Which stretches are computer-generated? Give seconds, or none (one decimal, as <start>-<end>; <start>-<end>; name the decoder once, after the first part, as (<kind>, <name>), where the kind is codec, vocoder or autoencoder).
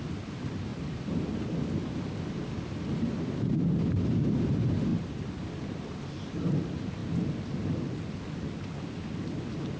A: 0.7-1.5 (vocoder, BigVGAN v2); 4.9-5.4